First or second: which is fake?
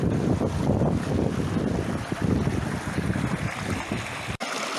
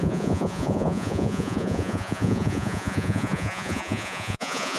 second